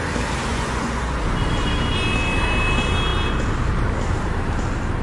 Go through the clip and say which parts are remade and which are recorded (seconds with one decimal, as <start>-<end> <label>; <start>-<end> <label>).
0.0-0.5 recorded; 0.5-1.2 remade; 1.2-5.0 recorded